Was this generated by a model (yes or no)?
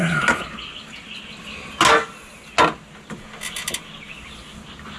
no